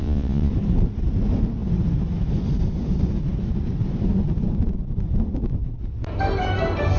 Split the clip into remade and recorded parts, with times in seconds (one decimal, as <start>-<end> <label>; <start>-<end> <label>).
0.0-0.5 remade; 0.5-7.0 recorded

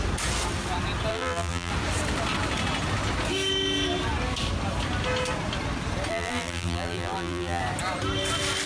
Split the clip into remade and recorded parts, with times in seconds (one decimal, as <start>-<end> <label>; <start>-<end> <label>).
0.0-1.1 recorded; 1.1-1.7 remade; 1.7-6.1 recorded; 6.1-7.6 remade; 7.6-8.7 recorded

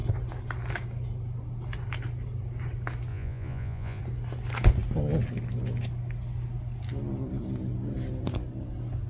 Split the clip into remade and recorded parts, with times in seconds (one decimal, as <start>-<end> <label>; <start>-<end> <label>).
0.0-3.1 recorded; 3.1-4.0 remade; 4.0-9.1 recorded

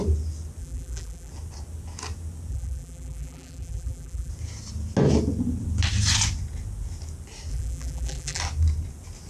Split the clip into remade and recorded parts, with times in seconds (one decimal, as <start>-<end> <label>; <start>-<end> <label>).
0.0-0.6 recorded; 0.6-1.3 remade; 1.3-2.5 recorded; 2.5-4.3 remade; 4.3-7.5 recorded; 7.5-8.4 remade; 8.4-9.3 recorded

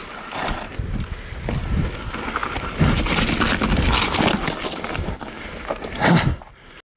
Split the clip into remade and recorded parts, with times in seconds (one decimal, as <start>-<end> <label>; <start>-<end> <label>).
0.0-7.0 recorded

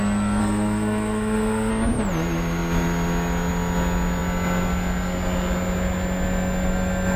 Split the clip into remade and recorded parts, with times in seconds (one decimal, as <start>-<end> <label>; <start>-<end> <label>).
0.0-0.4 recorded; 0.4-1.7 remade; 1.7-7.2 recorded